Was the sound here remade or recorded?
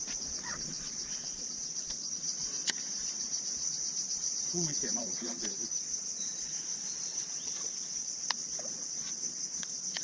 remade